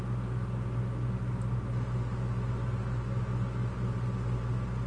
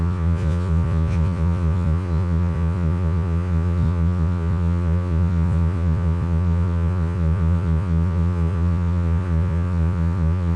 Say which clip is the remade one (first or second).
second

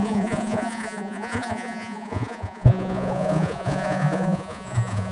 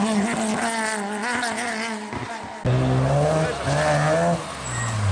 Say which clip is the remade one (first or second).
first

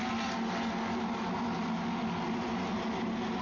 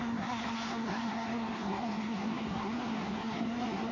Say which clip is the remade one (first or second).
second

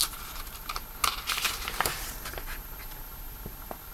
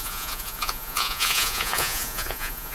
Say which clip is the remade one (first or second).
second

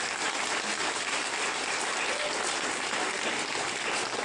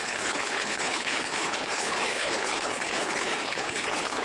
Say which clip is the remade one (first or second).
second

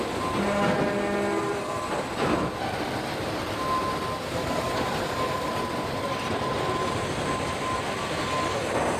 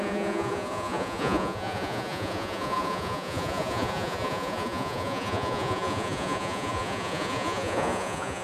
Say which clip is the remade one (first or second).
second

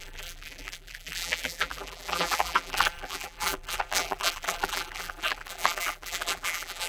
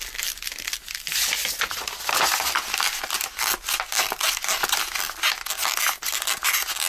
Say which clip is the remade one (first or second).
first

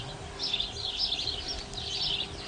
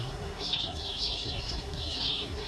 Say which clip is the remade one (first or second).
second